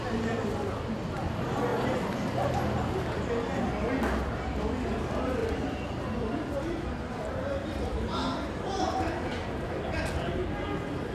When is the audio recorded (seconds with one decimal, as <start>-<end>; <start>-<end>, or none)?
0.0-11.1